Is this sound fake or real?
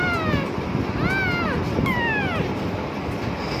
real